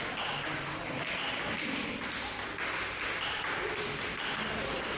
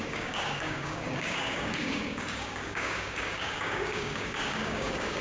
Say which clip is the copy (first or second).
second